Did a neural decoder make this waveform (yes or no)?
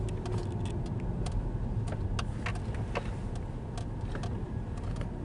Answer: no